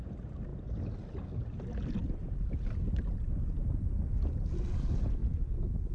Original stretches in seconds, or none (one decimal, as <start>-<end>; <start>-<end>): 0.0-5.9